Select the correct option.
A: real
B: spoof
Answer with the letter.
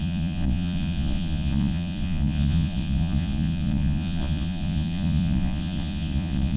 B